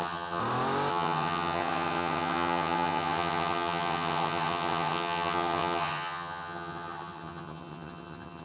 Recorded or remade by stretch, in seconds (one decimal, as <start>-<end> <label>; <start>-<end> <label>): 0.0-0.4 remade; 0.4-0.9 recorded; 0.9-8.4 remade